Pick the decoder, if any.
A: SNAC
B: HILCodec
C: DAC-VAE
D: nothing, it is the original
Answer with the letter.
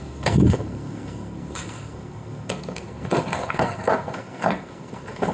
A